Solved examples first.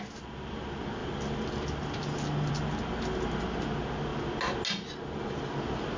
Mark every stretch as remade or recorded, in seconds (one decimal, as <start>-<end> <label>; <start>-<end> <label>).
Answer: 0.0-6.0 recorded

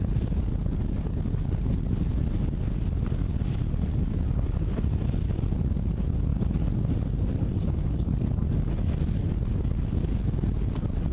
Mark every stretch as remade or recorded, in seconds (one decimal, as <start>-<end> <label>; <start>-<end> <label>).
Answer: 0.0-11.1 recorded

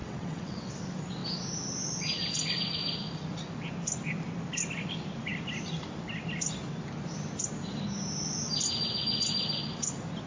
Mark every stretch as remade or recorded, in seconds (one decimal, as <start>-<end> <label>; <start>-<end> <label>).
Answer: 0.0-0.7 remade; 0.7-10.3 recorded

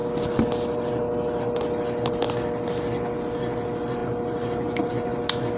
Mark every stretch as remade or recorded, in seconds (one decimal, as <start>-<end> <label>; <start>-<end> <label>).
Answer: 0.0-5.6 recorded

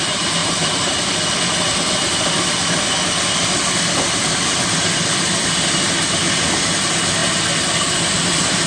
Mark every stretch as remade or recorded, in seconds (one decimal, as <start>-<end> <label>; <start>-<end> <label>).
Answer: 0.0-0.4 recorded; 0.4-1.0 remade; 1.0-8.7 recorded